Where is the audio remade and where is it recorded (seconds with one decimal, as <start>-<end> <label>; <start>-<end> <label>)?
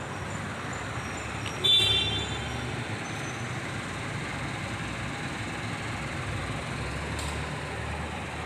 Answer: 0.0-8.5 recorded